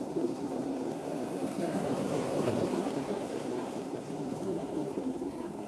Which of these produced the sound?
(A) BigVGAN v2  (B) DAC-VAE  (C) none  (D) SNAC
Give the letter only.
D